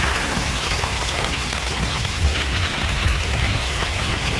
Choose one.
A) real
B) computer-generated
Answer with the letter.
B